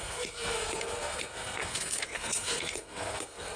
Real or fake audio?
fake